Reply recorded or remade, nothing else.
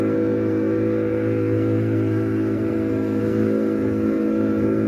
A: remade